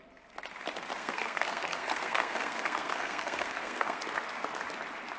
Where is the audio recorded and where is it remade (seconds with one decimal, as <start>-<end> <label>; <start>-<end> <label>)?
0.0-1.0 recorded; 1.0-4.0 remade; 4.0-5.2 recorded